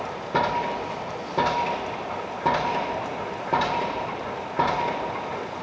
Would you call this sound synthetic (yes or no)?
no